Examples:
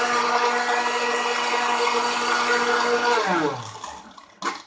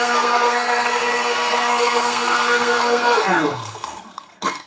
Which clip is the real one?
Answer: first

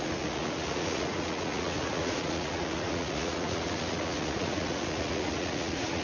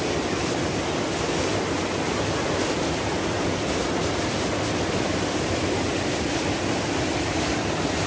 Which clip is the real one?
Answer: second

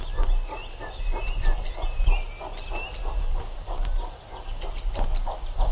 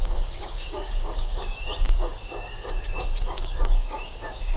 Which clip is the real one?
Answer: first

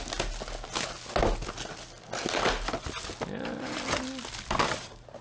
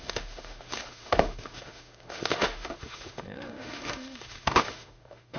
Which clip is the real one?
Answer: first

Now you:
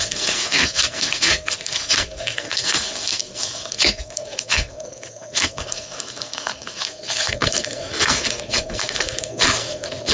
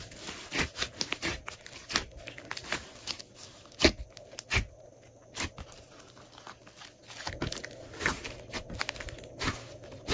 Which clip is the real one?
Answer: second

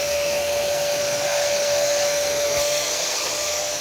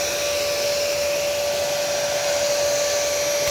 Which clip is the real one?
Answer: second